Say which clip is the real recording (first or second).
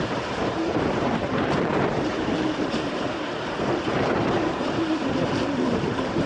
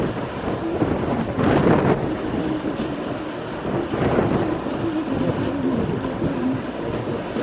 second